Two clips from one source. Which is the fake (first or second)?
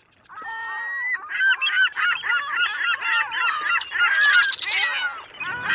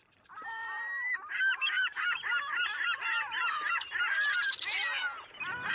second